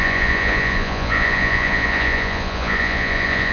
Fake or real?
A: fake